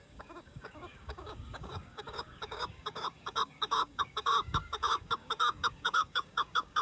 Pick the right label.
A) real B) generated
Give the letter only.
B